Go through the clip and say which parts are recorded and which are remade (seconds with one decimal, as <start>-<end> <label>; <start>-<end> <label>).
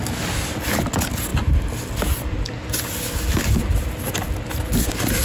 0.0-5.2 recorded